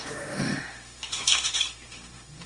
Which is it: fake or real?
fake